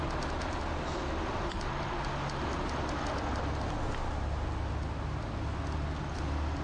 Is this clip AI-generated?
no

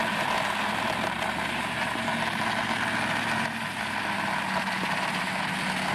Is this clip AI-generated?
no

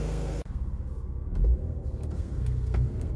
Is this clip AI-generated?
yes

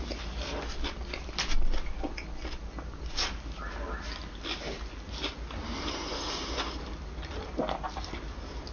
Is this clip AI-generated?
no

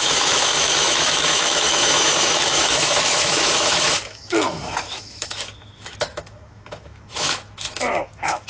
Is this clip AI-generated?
yes